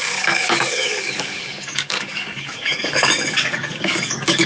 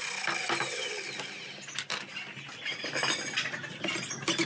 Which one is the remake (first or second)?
first